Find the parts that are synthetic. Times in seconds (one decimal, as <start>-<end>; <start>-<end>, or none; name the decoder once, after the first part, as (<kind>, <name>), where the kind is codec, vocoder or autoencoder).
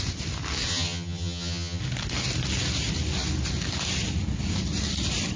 0.7-1.8 (vocoder, HiFi-GAN)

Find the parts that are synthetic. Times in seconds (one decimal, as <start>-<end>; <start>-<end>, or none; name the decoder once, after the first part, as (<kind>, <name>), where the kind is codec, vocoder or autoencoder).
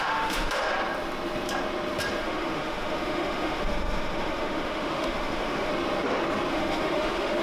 0.0-0.7 (autoencoder, DAC-VAE); 2.2-5.7; 6.5-7.4